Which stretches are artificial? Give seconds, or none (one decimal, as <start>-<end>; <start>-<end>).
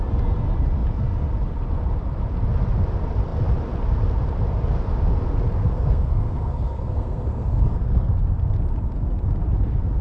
5.6-8.1